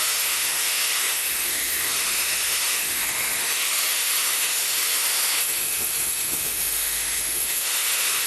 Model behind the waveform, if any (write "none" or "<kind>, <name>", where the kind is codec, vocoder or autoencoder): autoencoder, DAC-VAE